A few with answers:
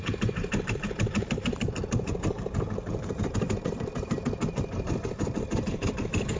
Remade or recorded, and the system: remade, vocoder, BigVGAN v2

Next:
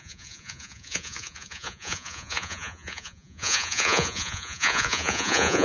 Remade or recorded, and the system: remade, vocoder, Vocos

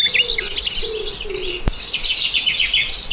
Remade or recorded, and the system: recorded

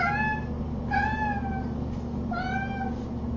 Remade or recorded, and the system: recorded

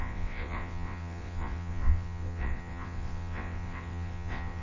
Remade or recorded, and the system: remade, vocoder, WaveNeXt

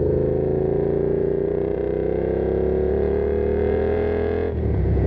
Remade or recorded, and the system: remade, vocoder, Vocos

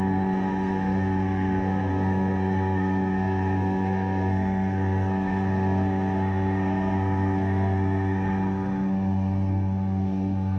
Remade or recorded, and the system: remade, codec, SNAC